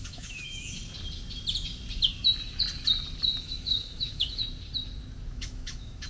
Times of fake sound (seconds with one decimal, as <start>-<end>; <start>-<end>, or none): 0.0-0.8; 3.4-4.4; 5.3-6.1